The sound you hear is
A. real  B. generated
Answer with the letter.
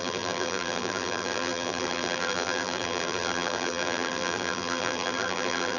B